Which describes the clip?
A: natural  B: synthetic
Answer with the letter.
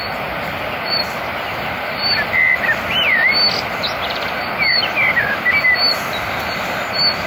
A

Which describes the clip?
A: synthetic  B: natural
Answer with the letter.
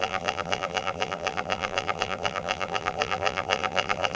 A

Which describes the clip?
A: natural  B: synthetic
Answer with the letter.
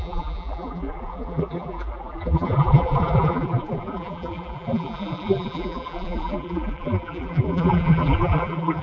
B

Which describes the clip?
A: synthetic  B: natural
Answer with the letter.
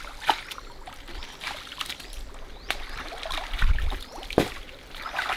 A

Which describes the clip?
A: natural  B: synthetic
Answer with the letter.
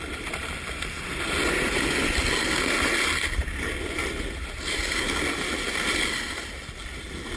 A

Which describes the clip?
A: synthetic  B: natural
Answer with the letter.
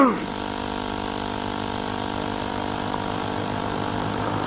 B